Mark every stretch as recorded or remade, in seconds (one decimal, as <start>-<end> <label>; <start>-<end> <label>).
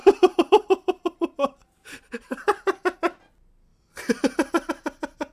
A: 0.0-3.2 remade; 3.2-3.7 recorded; 3.7-4.7 remade; 4.7-5.3 recorded